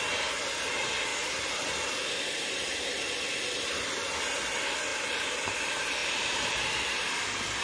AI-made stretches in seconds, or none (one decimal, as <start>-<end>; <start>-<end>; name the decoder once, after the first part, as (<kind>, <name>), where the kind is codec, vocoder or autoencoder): 1.1-2.1 (vocoder, BigVGAN v2); 4.9-5.5; 6.0-6.7